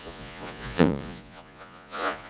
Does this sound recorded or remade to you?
remade